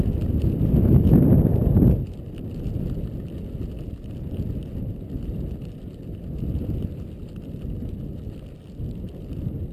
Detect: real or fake real